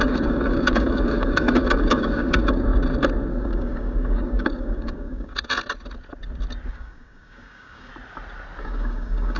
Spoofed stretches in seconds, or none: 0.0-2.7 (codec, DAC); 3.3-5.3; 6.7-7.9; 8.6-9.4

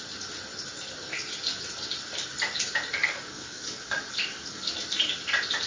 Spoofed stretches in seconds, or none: 3.0-4.7 (codec, DAC)

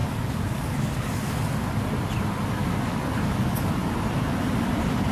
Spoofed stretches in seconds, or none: 0.0-1.4 (codec, DAC); 2.6-3.7

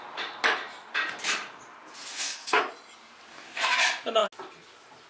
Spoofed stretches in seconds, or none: 2.1-2.6 (codec, DAC); 3.3-3.8

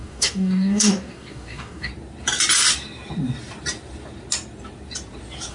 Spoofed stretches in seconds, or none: 0.0-1.9 (codec, DAC)